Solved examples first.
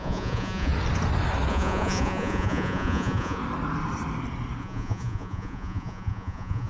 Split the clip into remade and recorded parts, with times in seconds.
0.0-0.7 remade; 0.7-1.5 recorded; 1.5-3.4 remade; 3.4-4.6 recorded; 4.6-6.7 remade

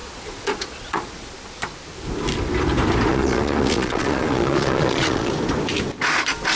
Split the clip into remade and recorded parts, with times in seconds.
0.0-1.3 remade; 1.3-3.1 recorded; 3.1-5.3 remade; 5.3-6.6 recorded

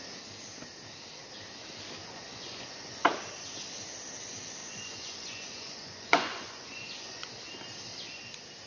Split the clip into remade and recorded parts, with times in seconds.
0.0-2.0 recorded; 2.0-3.1 remade; 3.1-4.6 recorded; 4.6-7.3 remade; 7.3-8.7 recorded